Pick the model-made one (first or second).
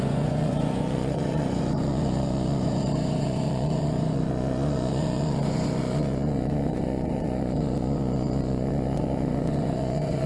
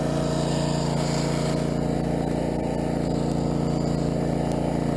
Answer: first